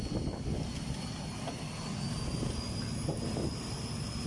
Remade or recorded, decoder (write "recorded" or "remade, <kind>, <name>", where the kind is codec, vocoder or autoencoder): recorded